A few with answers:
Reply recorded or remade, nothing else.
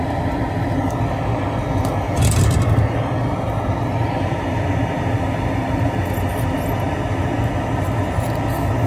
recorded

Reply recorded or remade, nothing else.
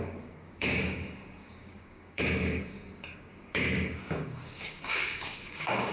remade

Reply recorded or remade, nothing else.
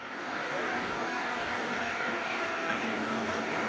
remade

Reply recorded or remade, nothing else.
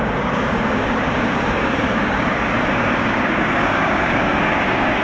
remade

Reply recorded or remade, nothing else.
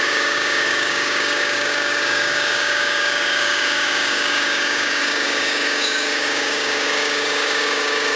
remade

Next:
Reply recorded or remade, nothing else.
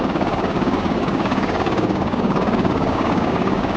remade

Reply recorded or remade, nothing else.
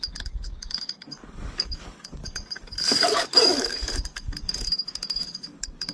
remade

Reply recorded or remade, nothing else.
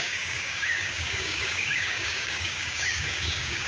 remade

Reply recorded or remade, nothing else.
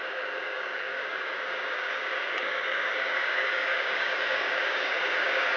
remade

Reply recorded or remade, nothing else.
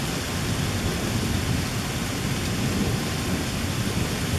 recorded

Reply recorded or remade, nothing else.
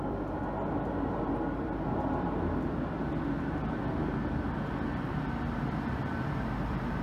recorded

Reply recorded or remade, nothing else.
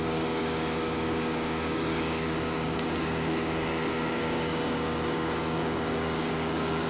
remade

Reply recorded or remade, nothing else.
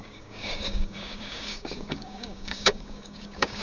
remade